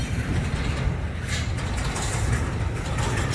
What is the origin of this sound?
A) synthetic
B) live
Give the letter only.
B